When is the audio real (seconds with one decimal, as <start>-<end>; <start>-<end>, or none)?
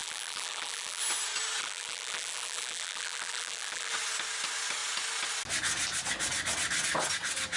1.0-1.6; 3.9-7.6